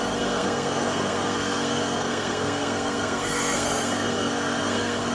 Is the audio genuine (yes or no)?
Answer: no